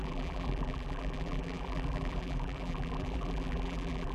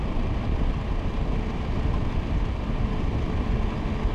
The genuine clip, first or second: second